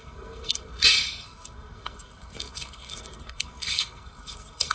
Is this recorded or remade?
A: remade